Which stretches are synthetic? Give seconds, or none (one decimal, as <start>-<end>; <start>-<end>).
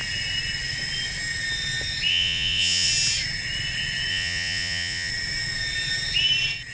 2.1-2.9; 4.1-5.1